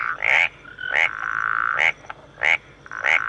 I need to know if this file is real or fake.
real